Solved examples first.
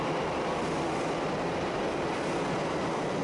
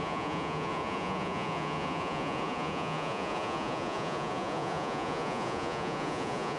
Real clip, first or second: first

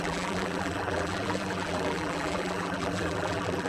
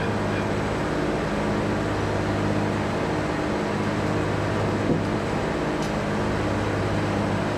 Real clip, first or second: second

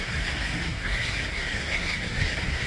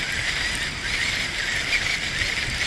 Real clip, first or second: second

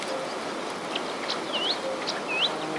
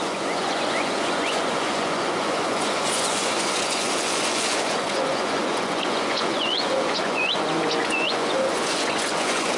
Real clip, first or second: first